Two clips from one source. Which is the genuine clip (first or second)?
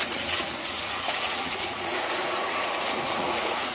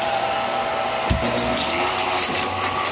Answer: second